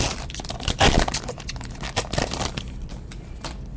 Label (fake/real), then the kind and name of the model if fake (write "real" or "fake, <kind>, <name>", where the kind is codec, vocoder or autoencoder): real